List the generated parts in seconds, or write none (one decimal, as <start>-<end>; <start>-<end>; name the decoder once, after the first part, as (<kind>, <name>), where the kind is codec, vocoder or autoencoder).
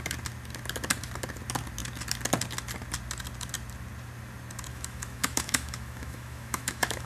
4.7-7.1 (autoencoder, DAC-VAE)